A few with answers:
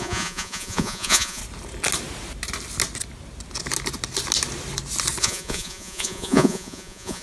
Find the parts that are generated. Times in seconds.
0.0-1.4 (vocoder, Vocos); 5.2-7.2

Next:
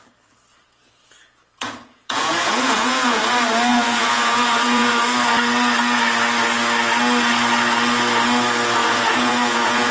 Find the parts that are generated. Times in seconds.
0.5-3.2 (vocoder, Vocos); 3.7-4.9; 8.8-9.9